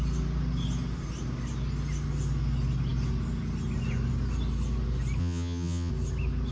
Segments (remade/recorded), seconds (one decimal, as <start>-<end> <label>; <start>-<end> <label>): 0.0-5.2 recorded; 5.2-5.9 remade; 5.9-6.5 recorded